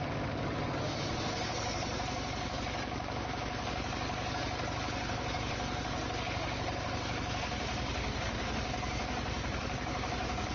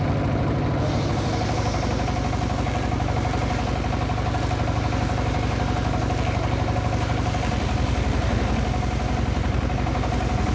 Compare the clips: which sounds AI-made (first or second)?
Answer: first